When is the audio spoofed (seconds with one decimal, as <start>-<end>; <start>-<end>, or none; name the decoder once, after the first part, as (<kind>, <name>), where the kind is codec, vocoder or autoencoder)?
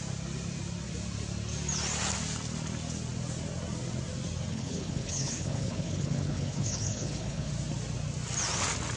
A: 4.5-7.5 (codec, HILCodec)